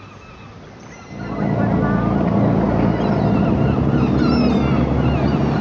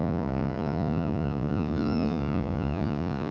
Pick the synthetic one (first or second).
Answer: second